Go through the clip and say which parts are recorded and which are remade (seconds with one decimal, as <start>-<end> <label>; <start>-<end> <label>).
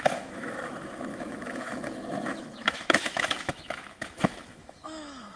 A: 0.0-5.4 remade